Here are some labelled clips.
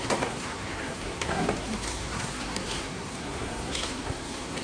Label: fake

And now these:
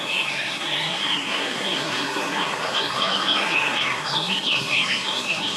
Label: fake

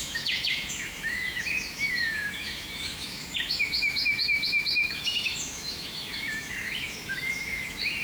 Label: fake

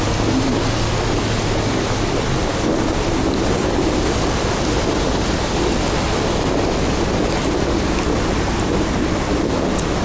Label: real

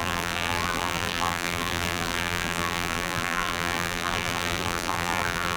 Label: fake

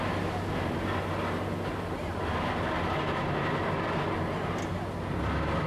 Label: real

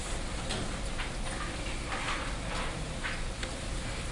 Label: real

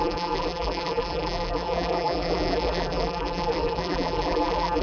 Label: fake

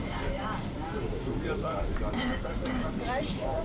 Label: fake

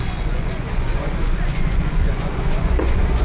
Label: fake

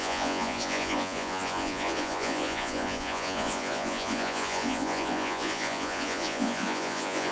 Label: fake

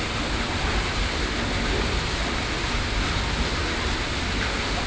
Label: real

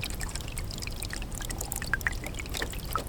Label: real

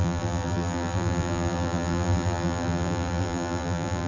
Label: fake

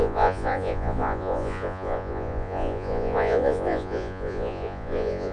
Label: fake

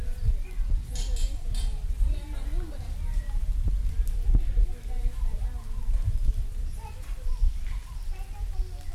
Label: real